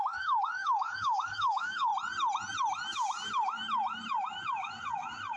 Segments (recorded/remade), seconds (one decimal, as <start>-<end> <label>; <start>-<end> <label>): 0.0-1.9 remade; 1.9-5.4 recorded